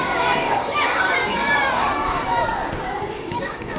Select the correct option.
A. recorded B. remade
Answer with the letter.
B